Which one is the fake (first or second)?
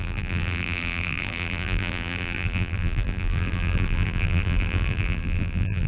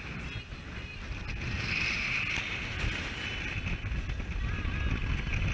first